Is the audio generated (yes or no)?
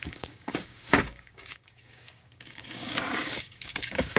yes